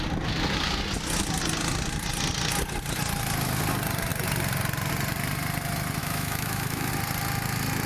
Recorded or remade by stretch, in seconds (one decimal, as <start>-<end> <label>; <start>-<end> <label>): 0.0-6.0 recorded; 6.0-6.9 remade; 6.9-7.9 recorded